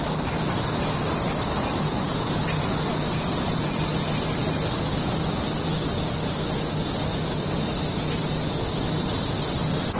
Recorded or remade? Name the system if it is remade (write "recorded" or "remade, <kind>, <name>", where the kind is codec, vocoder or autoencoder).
recorded